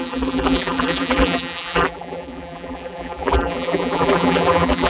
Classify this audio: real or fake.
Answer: fake